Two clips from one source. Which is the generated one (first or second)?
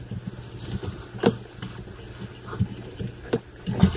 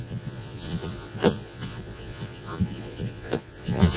second